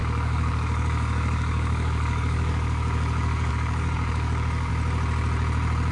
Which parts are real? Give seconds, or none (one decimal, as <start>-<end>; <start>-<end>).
4.7-5.9